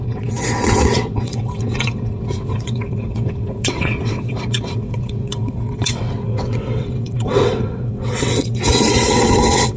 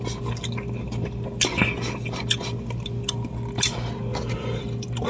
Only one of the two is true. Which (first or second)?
second